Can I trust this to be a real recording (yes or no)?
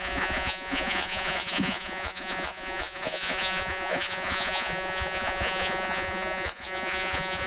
no